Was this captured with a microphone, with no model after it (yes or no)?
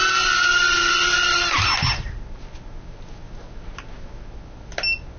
yes